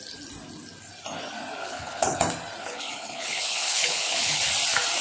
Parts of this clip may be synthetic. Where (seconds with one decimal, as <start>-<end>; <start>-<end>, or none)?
1.6-2.2; 2.6-4.4